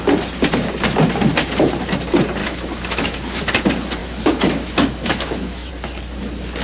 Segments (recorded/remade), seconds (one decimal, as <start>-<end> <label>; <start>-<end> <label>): 0.0-2.4 recorded; 2.4-3.4 remade; 3.4-4.0 recorded; 4.0-5.7 remade; 5.7-6.6 recorded